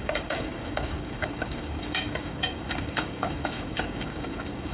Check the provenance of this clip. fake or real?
fake